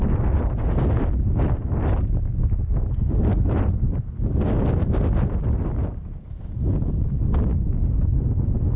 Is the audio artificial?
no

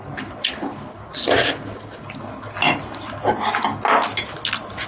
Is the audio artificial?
no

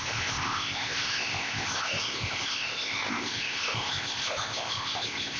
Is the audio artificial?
yes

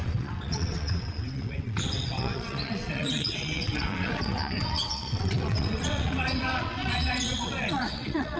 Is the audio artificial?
yes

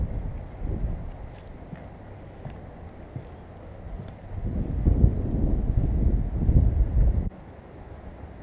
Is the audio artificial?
no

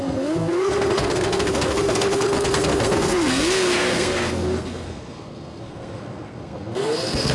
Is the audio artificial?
yes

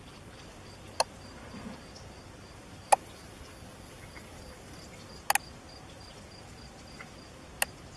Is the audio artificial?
no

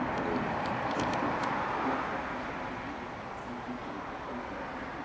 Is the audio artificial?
no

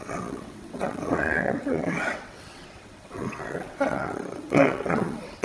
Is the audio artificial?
yes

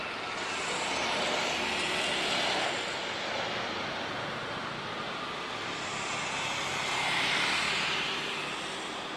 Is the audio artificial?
no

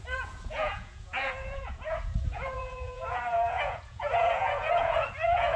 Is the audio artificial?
yes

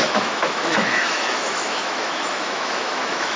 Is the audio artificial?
yes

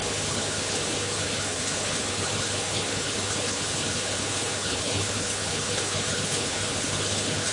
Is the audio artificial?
yes